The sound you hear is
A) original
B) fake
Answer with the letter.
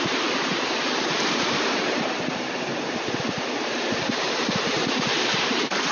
B